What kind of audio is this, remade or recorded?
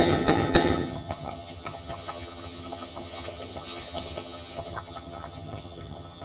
remade